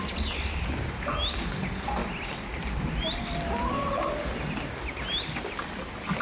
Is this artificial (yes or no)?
no